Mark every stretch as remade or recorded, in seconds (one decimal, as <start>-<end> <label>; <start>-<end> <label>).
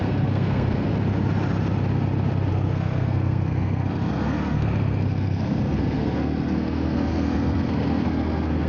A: 0.0-0.9 remade; 0.9-2.5 recorded; 2.5-8.7 remade